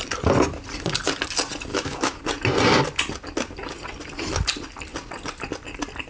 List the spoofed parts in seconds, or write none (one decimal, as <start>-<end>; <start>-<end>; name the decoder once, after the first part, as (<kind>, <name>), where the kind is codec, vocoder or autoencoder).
1.7-2.2 (autoencoder, DAC-VAE)